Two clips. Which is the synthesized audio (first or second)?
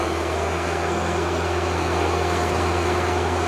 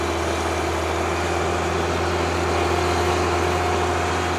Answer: first